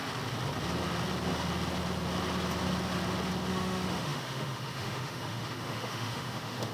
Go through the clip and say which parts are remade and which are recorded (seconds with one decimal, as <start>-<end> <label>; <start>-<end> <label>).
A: 0.0-3.5 recorded; 3.5-6.7 remade